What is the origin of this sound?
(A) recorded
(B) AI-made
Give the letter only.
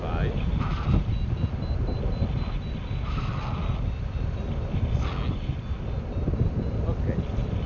A